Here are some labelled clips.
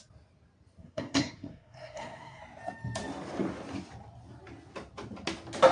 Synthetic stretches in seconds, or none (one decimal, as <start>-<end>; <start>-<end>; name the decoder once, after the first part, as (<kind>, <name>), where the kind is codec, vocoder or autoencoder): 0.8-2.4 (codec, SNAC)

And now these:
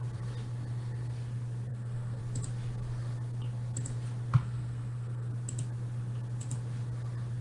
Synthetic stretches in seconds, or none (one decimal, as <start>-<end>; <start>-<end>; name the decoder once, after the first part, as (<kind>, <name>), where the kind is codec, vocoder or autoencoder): 1.7-2.2 (codec, SNAC); 4.4-5.3

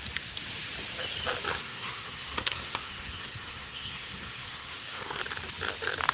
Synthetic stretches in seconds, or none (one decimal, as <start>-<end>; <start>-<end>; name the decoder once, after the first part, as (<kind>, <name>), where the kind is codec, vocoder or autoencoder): 1.5-5.2 (codec, SNAC)